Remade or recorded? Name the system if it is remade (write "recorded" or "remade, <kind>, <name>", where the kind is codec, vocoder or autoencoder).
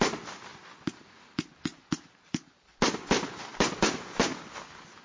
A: recorded